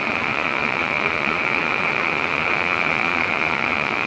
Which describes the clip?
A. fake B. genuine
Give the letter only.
A